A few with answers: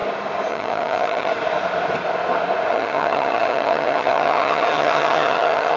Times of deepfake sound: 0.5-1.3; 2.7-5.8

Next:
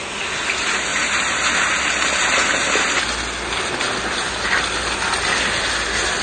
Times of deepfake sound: 0.9-1.7

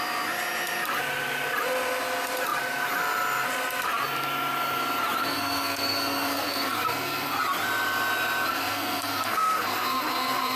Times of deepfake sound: 5.2-7.4; 8.5-10.6

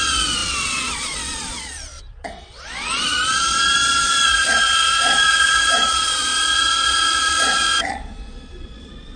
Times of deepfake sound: 0.0-9.2

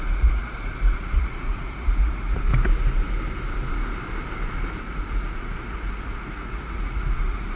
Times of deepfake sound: 0.0-2.5; 4.8-7.6